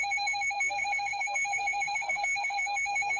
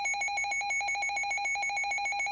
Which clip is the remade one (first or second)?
first